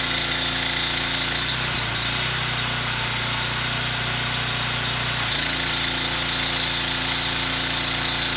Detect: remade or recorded recorded